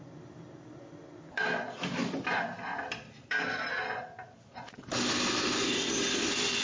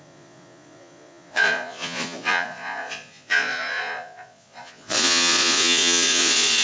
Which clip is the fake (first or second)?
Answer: second